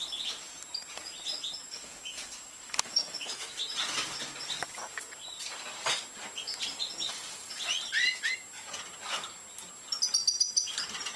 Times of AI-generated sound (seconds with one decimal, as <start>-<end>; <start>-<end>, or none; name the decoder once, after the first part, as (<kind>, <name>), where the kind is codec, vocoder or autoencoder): 1.6-3.6 (autoencoder, DAC-VAE)